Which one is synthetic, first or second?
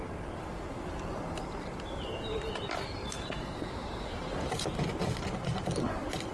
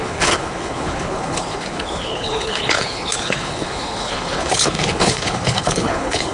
second